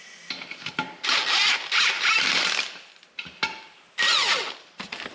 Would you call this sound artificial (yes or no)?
no